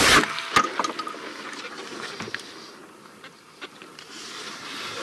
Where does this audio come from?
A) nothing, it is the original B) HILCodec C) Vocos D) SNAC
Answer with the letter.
A